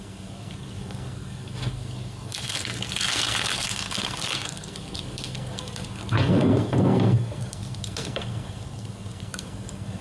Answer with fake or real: fake